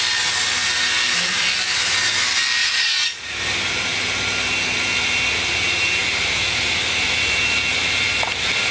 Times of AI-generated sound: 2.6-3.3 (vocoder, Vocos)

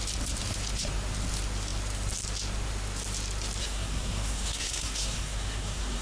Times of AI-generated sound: 3.6-6.0 (codec, SNAC)

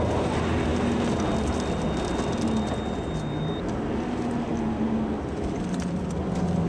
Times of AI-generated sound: none

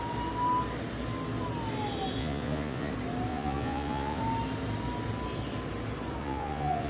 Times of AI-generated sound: 2.2-2.9 (vocoder, Vocos); 3.3-4.2; 6.2-6.9

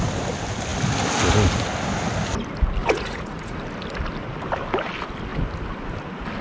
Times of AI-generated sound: 2.8-3.6 (vocoder, Vocos)

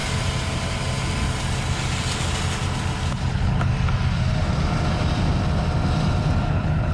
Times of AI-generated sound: 3.1-3.7 (codec, HILCodec); 6.5-6.9

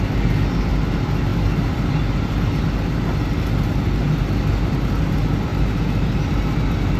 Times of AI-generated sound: none